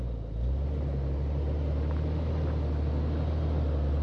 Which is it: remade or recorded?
recorded